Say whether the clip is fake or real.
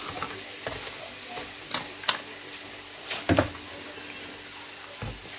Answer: real